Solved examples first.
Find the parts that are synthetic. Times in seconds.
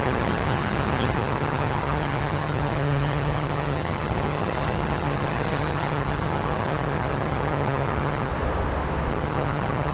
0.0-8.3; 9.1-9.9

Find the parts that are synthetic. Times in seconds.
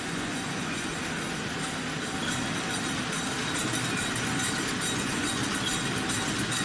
0.0-0.9; 4.9-5.4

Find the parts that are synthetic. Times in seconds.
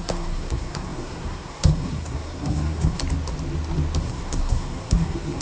0.0-3.0; 4.0-5.4